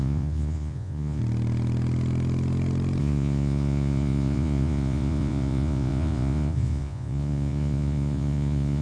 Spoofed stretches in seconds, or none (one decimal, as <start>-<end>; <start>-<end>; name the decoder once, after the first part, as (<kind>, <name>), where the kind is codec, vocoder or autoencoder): 0.0-1.2 (vocoder, Vocos); 3.0-8.8